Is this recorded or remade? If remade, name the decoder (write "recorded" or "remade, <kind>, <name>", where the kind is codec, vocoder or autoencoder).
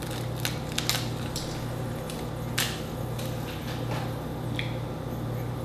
recorded